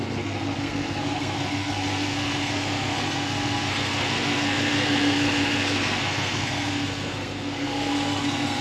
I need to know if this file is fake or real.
fake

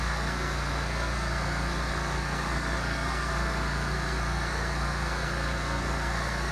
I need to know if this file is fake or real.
fake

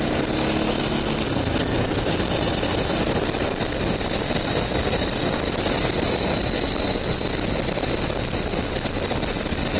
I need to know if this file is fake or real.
real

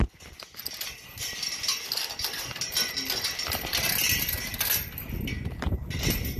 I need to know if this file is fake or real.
real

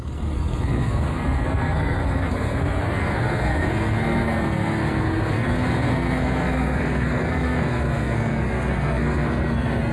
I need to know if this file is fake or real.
fake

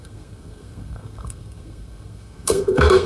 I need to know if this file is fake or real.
fake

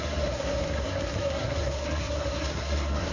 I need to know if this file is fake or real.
fake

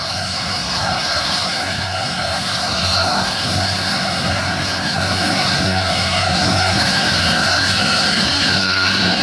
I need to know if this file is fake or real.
fake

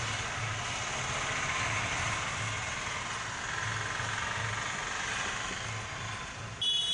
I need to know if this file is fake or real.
real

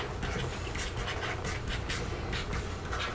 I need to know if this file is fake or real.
real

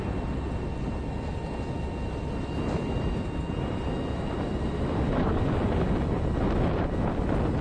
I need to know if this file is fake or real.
real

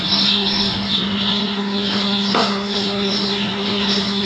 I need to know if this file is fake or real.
fake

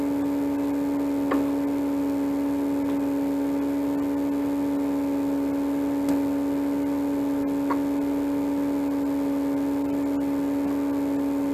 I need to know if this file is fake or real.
real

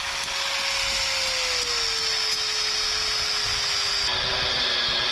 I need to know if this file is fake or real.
real